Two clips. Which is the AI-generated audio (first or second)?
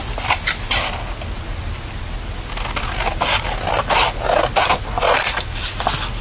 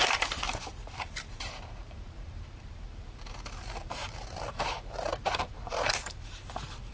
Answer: second